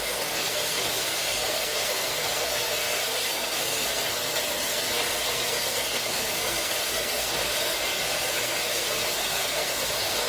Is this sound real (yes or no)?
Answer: no